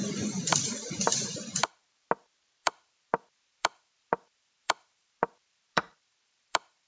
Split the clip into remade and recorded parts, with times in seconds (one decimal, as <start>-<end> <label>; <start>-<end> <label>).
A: 0.0-2.6 recorded; 2.6-6.9 remade